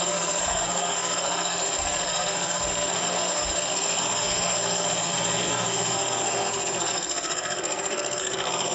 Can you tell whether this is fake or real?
fake